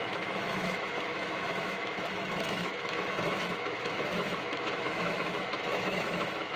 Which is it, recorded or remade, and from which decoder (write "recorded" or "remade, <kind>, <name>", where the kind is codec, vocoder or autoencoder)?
remade, autoencoder, DAC-VAE